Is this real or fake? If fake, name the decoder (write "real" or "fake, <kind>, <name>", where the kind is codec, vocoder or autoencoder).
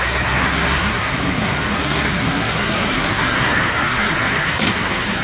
fake, codec, SNAC